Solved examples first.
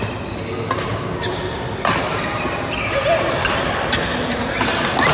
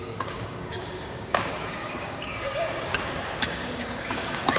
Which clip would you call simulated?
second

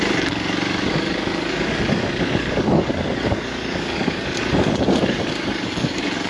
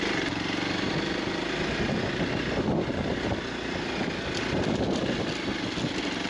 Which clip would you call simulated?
first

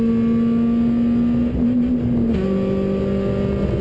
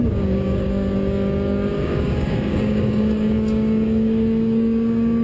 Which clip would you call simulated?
second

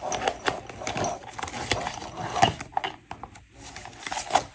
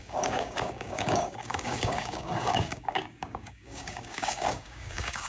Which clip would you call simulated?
second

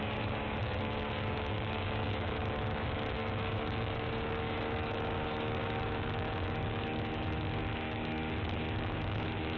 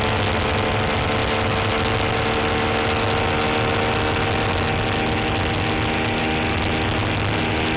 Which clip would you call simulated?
first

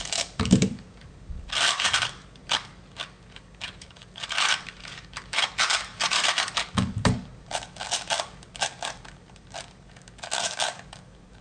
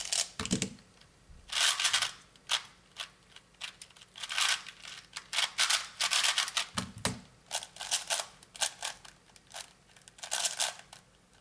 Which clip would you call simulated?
first